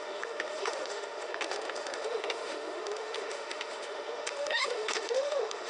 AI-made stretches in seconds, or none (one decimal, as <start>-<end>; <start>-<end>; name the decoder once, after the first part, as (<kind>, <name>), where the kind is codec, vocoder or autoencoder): 0.0-5.7 (autoencoder, DAC-VAE)